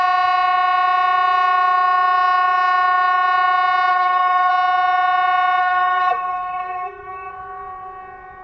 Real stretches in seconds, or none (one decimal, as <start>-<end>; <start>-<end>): 0.0-3.9; 4.5-5.6; 7.3-8.4

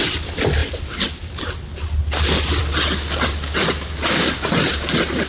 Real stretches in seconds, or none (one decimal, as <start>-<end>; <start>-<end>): 0.0-5.3

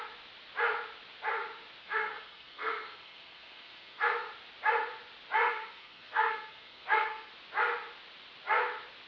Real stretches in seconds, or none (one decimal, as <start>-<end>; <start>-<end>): 0.0-1.8; 4.3-5.5; 7.3-9.1

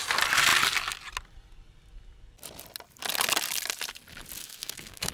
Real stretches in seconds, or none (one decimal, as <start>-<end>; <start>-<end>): 0.0-4.4

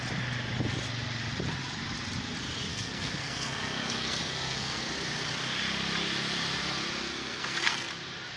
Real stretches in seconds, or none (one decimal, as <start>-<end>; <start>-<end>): 0.0-2.7; 4.8-7.0; 7.9-8.4

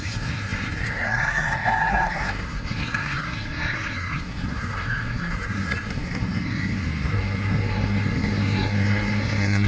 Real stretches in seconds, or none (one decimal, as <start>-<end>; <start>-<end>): none

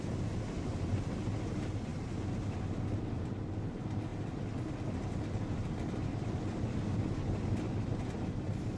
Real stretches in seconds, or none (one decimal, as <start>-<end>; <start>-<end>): 0.0-8.8